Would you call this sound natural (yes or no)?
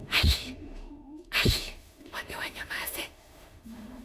no